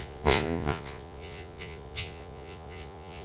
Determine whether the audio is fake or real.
fake